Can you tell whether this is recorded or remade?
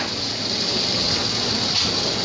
recorded